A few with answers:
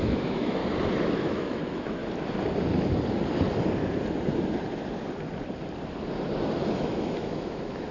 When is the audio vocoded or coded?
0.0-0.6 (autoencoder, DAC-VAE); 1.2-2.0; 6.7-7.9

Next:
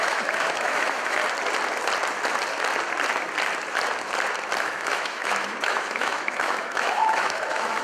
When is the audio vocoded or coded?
0.0-1.2 (autoencoder, DAC-VAE); 4.6-7.8

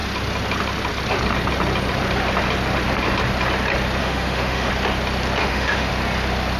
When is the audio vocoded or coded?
4.0-4.7 (autoencoder, DAC-VAE); 5.4-5.9

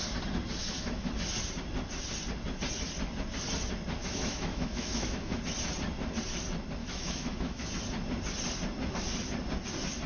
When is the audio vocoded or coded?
0.6-1.1 (autoencoder, DAC-VAE); 4.0-5.4; 6.8-7.7